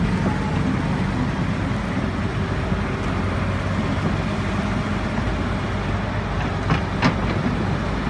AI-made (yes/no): no